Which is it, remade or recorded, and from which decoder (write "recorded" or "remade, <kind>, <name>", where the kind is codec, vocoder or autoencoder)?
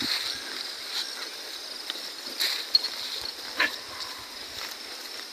recorded